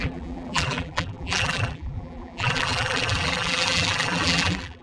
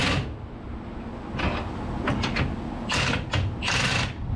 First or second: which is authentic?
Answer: second